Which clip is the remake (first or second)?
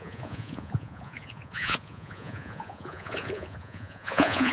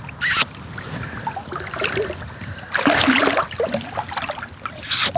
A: first